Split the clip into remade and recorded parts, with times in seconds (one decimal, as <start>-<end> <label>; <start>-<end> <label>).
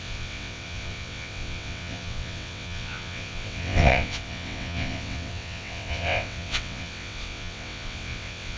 0.0-8.6 remade